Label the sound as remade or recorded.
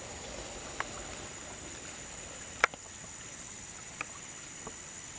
recorded